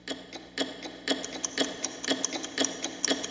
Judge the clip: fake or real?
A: real